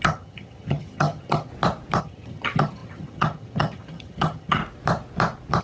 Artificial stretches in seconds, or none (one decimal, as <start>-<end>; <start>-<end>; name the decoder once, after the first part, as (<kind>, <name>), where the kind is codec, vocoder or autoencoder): 0.0-1.5 (vocoder, HiFi-GAN); 2.0-4.6

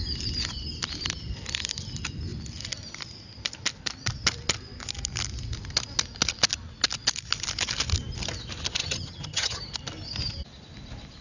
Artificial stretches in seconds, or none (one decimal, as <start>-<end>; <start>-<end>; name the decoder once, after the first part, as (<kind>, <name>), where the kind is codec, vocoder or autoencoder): 8.8-9.6 (vocoder, HiFi-GAN)

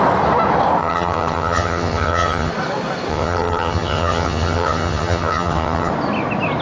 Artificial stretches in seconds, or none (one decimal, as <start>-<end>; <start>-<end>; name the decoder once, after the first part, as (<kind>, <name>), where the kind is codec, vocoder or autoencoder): 0.8-2.5 (vocoder, HiFi-GAN); 3.1-5.9

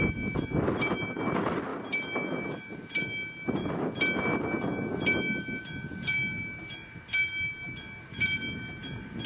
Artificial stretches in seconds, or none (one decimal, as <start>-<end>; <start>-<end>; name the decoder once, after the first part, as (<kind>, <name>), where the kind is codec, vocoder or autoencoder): none